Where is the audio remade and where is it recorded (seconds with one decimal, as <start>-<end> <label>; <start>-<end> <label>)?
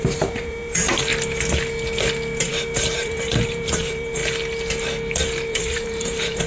0.0-1.1 remade; 1.1-2.5 recorded; 2.5-4.2 remade; 4.2-5.5 recorded; 5.5-6.5 remade